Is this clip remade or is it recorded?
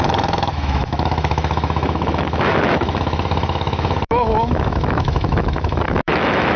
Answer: remade